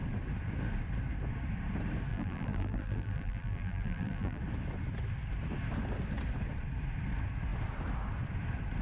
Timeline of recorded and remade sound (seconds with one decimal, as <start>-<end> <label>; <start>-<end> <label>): 0.0-2.1 recorded; 2.1-4.4 remade; 4.4-8.8 recorded